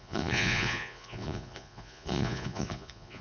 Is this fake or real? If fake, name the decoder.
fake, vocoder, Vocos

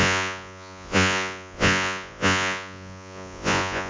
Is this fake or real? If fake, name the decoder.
fake, vocoder, Vocos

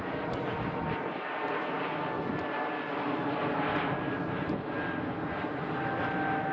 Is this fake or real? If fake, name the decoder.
real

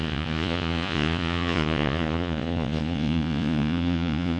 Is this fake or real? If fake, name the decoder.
fake, vocoder, Vocos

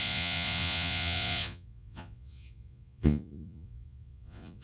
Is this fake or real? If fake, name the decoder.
fake, vocoder, Vocos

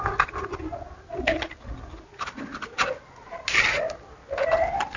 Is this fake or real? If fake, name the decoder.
real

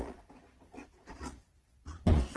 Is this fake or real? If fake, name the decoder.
fake, vocoder, Vocos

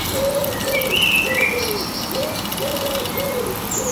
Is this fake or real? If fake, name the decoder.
real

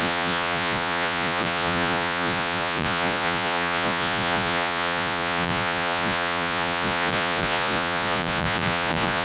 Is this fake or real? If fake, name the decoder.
fake, vocoder, Vocos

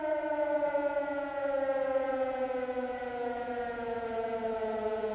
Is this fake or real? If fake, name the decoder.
fake, vocoder, Vocos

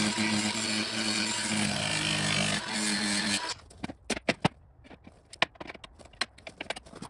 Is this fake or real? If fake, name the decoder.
real